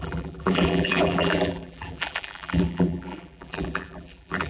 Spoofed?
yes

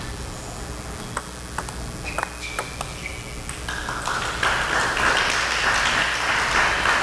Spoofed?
no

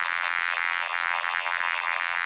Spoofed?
yes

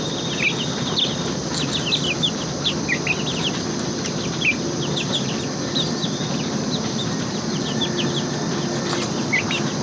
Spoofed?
no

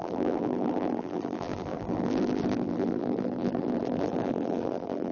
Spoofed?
yes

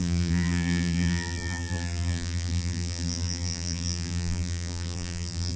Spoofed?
yes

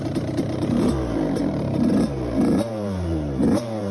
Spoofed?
yes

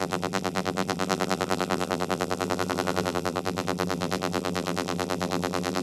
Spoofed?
yes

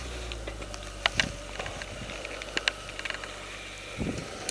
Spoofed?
no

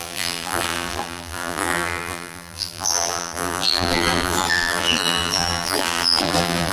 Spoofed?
yes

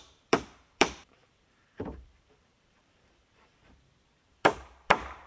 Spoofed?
yes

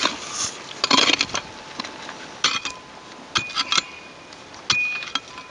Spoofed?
no